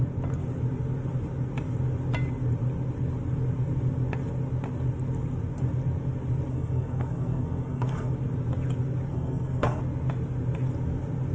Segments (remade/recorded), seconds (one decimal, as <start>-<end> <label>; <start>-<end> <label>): 0.0-6.5 recorded; 6.5-8.1 remade; 8.1-9.1 recorded; 9.1-9.8 remade; 9.8-11.3 recorded